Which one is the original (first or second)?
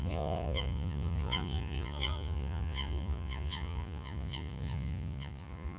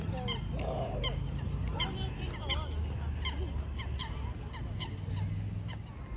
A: second